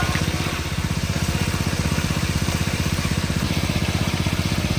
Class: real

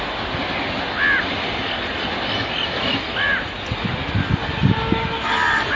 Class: real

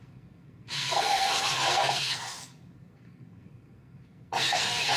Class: fake